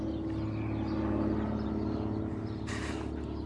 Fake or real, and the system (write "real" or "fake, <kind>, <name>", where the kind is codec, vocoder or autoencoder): real